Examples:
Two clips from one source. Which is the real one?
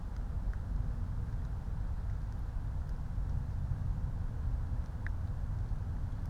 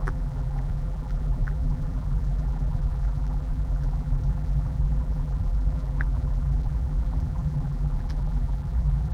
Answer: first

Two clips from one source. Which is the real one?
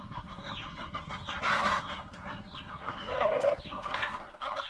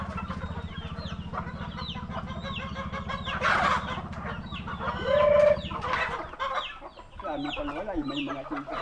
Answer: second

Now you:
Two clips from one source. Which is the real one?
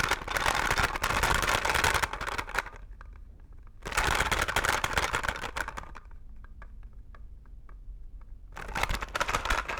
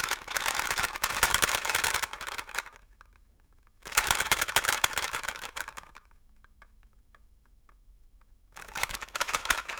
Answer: first